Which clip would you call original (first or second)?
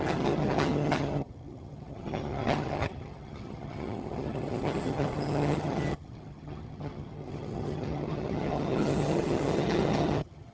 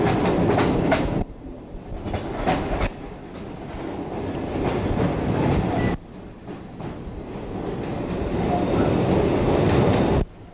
second